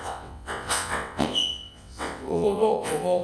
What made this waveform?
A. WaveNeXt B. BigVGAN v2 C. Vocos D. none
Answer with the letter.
A